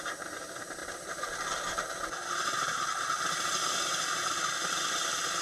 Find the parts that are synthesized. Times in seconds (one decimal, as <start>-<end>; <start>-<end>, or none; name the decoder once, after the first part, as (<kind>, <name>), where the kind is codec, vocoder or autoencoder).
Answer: 0.0-5.4 (vocoder, BigVGAN v2)